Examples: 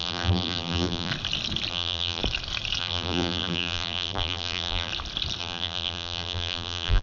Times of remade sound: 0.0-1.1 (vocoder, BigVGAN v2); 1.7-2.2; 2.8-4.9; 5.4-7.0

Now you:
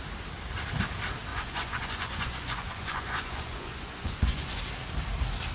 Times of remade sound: 1.3-4.6 (vocoder, Vocos)

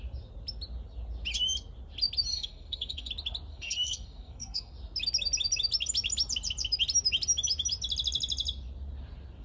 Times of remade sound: 2.3-3.1 (codec, SNAC); 3.5-4.7